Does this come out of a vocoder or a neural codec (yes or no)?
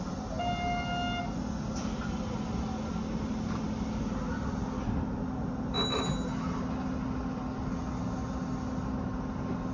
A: no